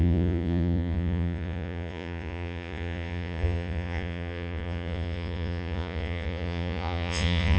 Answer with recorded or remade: remade